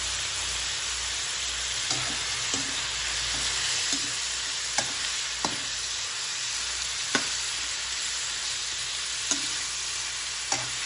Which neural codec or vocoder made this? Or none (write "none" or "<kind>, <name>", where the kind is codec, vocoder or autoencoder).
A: none